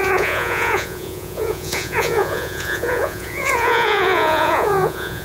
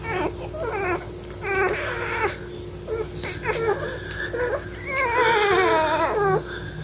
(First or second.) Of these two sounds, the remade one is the first